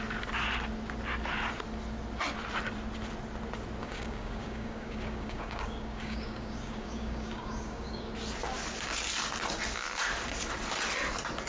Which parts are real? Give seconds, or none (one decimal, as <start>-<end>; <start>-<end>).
0.0-3.8; 8.1-11.5